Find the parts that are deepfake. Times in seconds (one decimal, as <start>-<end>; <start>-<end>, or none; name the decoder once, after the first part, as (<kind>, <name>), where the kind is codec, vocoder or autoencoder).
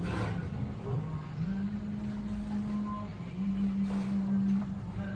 none